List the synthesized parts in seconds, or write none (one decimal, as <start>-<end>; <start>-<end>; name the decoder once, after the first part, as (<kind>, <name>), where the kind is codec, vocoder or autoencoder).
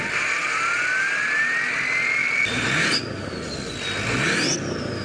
2.2-4.2 (vocoder, BigVGAN v2)